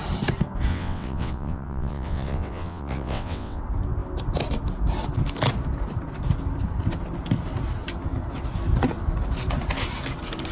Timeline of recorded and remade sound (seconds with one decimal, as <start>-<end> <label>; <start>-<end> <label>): 0.0-0.7 recorded; 0.7-3.6 remade; 3.6-10.5 recorded